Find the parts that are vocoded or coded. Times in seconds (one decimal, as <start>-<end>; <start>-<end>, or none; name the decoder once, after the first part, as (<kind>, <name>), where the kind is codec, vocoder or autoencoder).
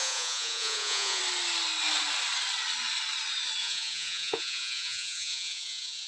0.0-1.2 (vocoder, Vocos); 3.6-6.1